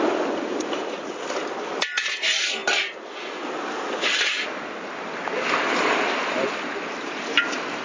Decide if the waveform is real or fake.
real